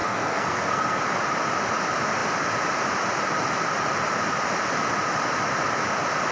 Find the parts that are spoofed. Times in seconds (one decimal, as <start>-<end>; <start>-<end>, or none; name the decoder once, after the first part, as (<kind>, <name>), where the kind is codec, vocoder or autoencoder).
0.0-1.0 (codec, SNAC)

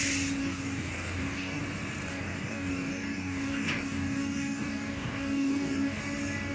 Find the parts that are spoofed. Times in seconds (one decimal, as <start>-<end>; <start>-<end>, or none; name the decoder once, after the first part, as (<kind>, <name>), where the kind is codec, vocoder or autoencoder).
0.4-1.6 (codec, DAC); 2.1-6.0

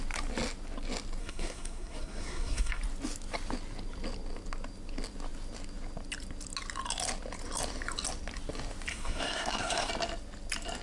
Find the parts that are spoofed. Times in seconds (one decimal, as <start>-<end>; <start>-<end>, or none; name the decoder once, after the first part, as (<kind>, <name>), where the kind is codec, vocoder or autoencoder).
1.2-2.8 (codec, SNAC); 8.9-9.9

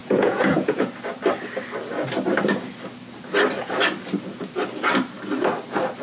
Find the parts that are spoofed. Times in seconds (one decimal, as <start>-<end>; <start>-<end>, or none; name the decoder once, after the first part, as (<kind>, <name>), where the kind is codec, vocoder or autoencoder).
0.0-0.9 (vocoder, Vocos)

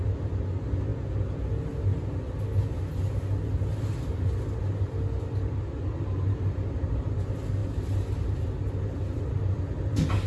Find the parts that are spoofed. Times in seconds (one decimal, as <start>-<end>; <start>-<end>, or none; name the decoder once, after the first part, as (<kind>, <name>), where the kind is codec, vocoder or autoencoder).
none

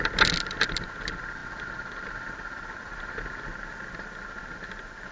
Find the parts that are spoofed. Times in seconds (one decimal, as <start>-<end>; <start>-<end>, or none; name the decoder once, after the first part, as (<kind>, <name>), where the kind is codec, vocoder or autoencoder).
none